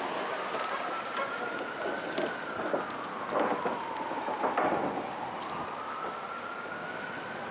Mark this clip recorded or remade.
recorded